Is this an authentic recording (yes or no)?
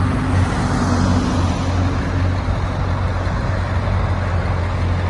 yes